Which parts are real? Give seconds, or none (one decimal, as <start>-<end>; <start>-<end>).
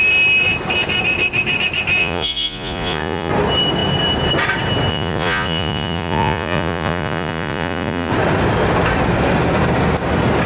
0.0-2.0; 3.3-4.9; 8.1-10.5